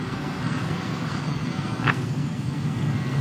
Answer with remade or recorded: remade